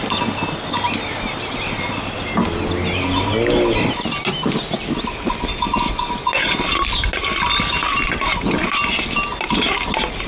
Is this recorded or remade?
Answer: recorded